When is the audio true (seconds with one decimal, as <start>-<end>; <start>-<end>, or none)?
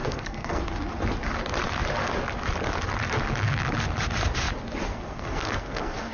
0.6-4.9